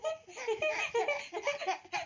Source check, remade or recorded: recorded